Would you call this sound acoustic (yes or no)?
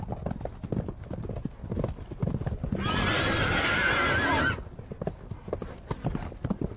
yes